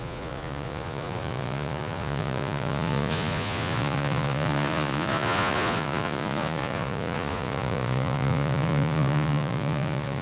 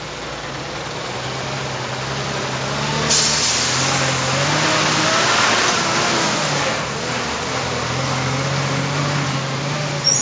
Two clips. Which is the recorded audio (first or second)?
second